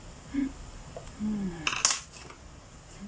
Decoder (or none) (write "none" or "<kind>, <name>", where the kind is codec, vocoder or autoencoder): none